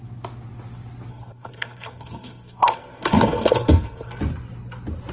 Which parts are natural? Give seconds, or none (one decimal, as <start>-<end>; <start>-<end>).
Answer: 0.0-1.1; 4.2-5.1